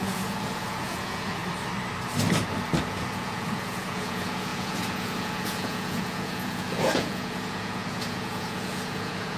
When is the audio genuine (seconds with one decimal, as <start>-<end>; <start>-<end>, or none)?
1.4-2.8